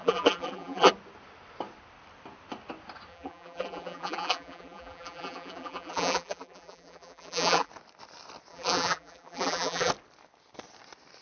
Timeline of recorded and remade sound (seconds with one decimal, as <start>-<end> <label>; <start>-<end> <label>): 0.0-0.9 remade; 0.9-3.1 recorded; 3.1-7.7 remade; 7.7-8.5 recorded; 8.5-9.9 remade; 9.9-11.2 recorded